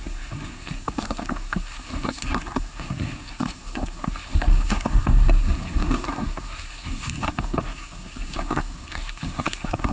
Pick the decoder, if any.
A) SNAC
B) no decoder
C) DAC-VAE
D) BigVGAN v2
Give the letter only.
A